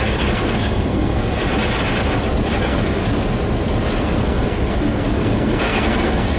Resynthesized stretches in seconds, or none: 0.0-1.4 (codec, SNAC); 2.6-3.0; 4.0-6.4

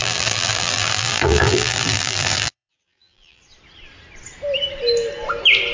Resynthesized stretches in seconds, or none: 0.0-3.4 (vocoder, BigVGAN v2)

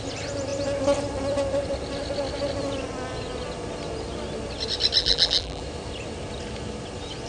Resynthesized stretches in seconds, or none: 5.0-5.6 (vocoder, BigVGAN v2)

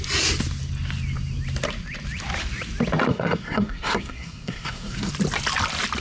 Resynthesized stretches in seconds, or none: 3.1-5.1 (codec, SNAC)